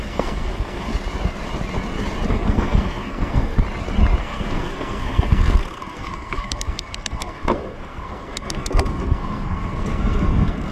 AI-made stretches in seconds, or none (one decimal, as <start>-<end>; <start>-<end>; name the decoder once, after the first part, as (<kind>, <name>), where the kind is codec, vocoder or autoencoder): 0.0-0.9 (codec, SNAC); 2.3-3.5; 4.2-10.7